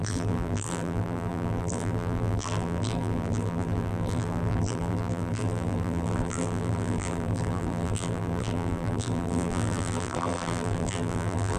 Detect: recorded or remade remade